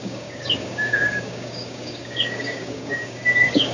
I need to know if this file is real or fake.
fake